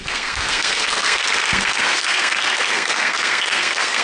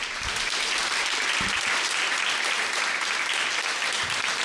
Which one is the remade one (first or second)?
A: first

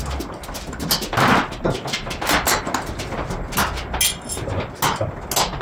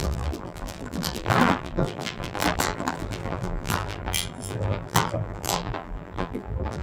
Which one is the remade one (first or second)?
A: second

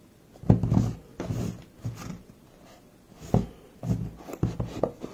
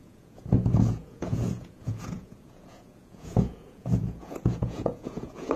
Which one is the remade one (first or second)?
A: second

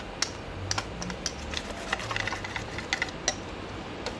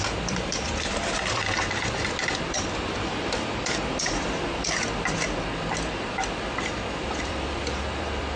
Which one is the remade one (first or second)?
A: second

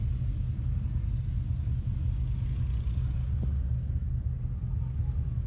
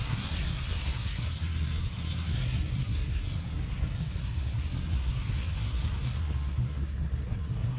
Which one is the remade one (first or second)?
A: second